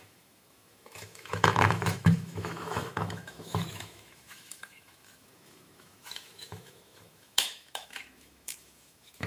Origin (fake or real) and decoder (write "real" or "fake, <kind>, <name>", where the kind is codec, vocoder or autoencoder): fake, autoencoder, DAC-VAE